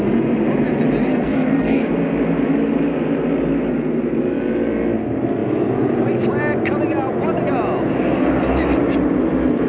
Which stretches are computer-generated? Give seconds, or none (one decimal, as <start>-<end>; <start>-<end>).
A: 1.1-1.9